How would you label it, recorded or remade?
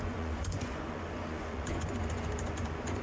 remade